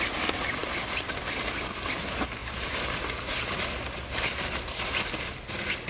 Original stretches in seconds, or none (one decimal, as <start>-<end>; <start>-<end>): 0.0-5.9